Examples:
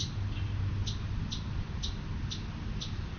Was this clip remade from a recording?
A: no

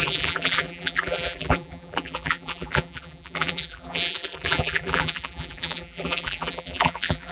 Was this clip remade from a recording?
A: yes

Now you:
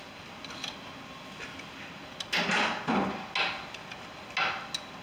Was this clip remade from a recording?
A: no